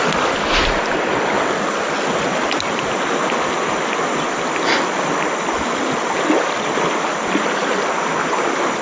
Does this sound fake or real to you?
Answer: real